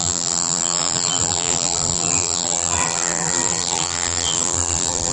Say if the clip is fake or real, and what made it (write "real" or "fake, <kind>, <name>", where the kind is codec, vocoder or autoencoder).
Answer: fake, vocoder, BigVGAN v2